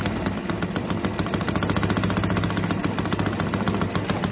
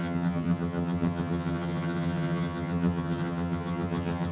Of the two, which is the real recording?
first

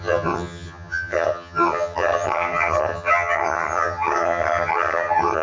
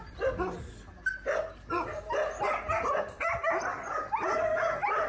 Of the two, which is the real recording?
second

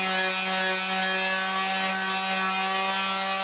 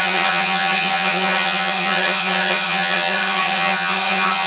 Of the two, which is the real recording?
first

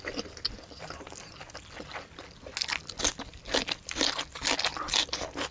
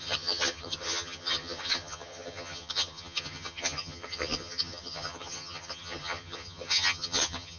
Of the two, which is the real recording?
first